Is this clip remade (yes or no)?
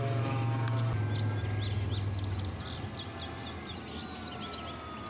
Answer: no